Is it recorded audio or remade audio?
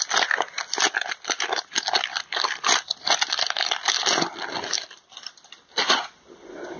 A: recorded